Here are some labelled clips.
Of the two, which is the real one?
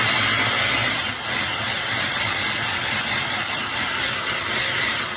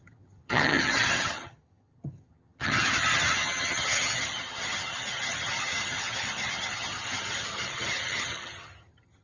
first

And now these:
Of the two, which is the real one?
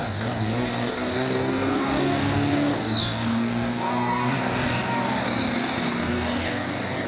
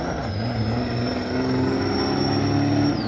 second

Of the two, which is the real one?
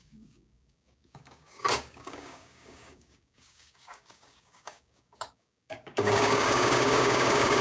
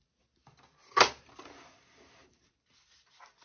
second